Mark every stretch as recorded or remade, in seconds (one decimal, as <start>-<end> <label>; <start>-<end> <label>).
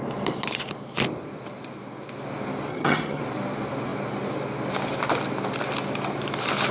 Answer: 0.0-2.7 recorded; 2.7-3.2 remade; 3.2-6.7 recorded